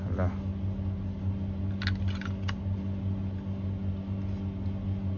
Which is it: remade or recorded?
recorded